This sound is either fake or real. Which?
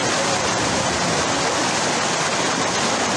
real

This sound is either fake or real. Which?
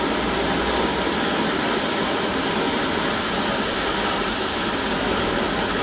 real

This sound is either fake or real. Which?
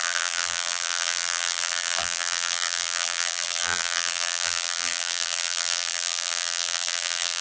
fake